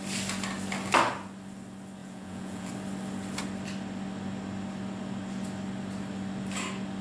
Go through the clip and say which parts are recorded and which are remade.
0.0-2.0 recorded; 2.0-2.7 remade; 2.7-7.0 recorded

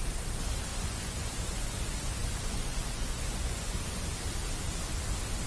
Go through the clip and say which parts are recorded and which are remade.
0.0-0.7 recorded; 0.7-4.0 remade; 4.0-5.5 recorded